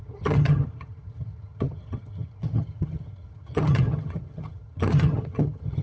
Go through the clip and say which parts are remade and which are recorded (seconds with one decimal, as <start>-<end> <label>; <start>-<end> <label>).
0.0-5.8 remade